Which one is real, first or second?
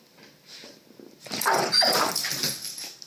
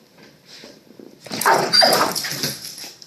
first